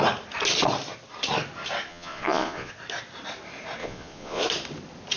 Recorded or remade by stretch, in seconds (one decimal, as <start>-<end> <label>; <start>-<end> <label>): 0.0-1.9 recorded; 1.9-2.7 remade; 2.7-3.8 recorded; 3.8-4.4 remade; 4.4-5.2 recorded